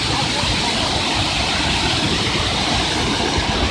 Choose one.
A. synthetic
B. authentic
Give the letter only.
B